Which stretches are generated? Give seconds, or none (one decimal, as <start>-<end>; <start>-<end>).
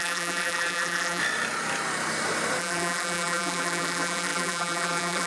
0.0-1.2; 2.6-5.3